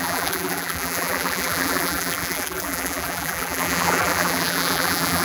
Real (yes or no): no